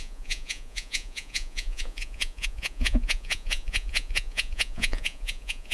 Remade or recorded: remade